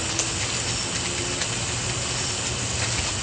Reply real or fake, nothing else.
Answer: real